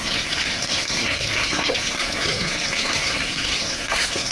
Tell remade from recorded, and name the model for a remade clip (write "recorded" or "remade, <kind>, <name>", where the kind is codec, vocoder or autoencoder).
remade, codec, SNAC